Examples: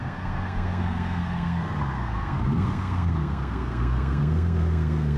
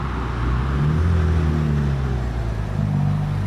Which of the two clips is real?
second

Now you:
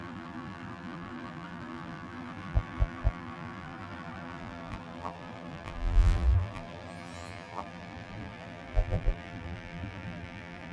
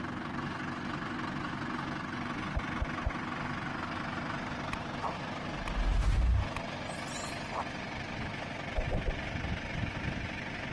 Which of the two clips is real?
second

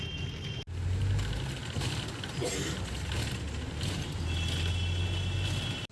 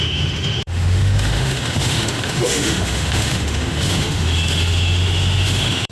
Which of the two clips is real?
first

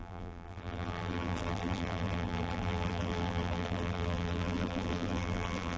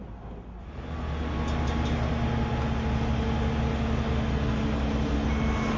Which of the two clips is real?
second